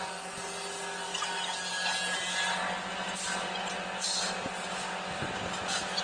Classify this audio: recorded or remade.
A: recorded